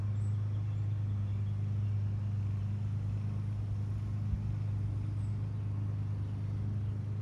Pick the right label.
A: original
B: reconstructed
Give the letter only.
A